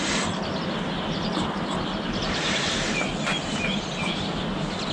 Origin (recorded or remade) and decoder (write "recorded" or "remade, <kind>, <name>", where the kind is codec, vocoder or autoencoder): recorded